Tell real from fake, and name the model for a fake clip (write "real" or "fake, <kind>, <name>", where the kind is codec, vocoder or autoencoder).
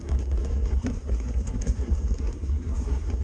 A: fake, codec, SNAC